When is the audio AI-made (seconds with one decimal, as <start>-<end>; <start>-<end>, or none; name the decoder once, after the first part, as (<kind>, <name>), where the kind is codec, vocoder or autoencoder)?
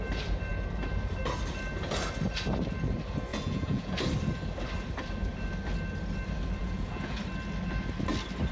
3.3-3.9 (vocoder, Vocos); 6.6-7.2